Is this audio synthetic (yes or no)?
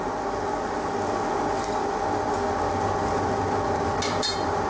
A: no